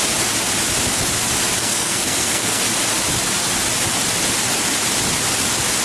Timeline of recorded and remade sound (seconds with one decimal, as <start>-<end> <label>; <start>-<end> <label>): 0.0-1.6 recorded; 1.6-2.6 remade; 2.6-5.8 recorded